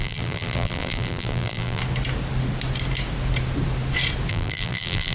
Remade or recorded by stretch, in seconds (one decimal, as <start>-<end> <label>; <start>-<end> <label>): 0.0-1.8 remade; 1.8-4.3 recorded; 4.3-5.1 remade